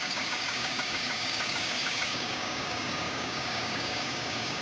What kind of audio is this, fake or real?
fake